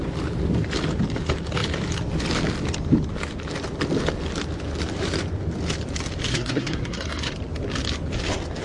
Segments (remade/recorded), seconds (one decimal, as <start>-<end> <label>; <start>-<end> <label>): 0.0-6.3 recorded; 6.3-7.3 remade; 7.3-8.6 recorded